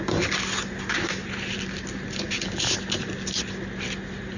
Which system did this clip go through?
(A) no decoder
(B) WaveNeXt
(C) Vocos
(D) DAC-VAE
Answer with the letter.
A